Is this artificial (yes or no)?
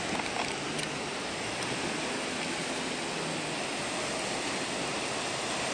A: no